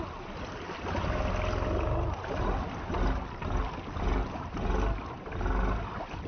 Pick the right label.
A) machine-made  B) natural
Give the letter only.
B